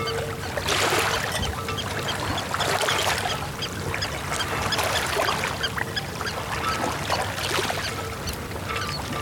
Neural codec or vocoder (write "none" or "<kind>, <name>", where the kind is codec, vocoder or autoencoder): none